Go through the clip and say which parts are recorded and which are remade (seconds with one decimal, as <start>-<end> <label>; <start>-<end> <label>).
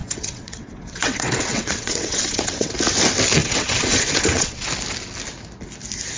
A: 0.0-2.7 remade; 2.7-3.4 recorded; 3.4-4.7 remade; 4.7-6.2 recorded